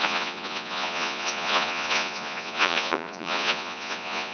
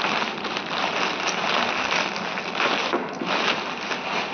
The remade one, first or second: first